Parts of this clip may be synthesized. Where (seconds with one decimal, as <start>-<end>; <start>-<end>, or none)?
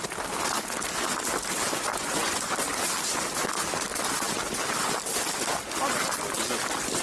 2.0-2.5